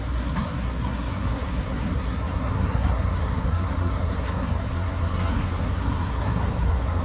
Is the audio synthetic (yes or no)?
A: yes